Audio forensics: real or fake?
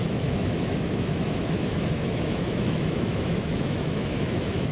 fake